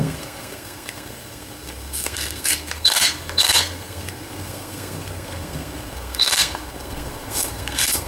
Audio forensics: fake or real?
fake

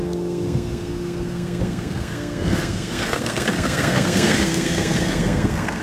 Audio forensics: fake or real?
fake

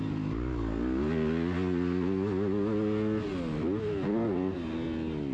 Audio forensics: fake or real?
real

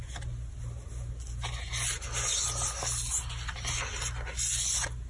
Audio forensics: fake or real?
real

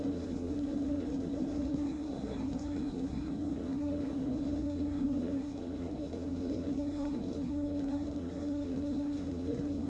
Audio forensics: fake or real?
fake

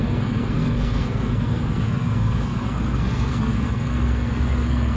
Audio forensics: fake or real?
fake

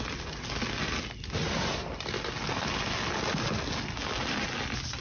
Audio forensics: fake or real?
real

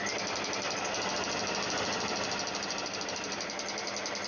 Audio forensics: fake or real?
real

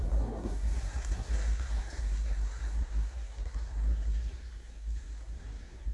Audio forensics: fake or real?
fake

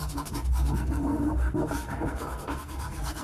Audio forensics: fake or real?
fake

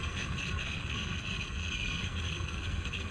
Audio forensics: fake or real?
fake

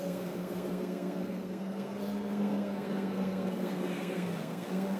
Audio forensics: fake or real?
fake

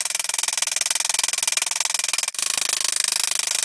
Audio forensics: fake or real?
real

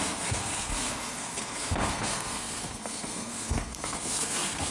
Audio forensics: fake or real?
fake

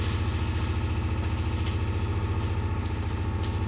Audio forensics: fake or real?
real